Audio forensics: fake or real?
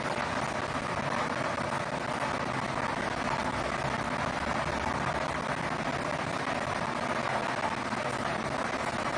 real